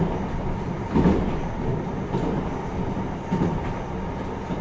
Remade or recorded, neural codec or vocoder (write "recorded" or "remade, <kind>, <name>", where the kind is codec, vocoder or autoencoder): recorded